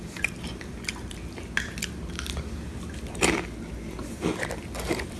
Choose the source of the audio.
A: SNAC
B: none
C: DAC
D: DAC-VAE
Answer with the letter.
B